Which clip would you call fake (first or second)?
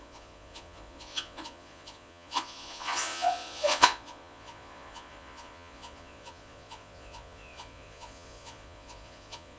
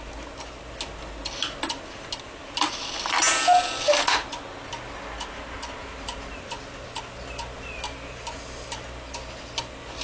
first